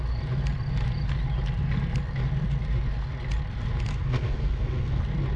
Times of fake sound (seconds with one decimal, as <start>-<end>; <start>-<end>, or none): 3.9-5.0